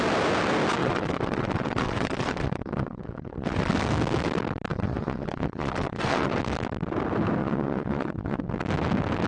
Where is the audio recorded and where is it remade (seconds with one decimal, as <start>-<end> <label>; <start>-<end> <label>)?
0.0-0.8 recorded; 0.8-3.7 remade; 3.7-4.7 recorded; 4.7-6.3 remade; 6.3-7.4 recorded; 7.4-8.5 remade; 8.5-9.3 recorded